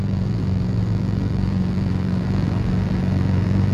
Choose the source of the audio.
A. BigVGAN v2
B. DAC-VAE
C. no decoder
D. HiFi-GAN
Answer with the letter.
A